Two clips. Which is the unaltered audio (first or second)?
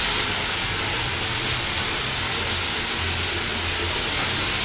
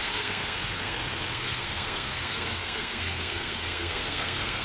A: first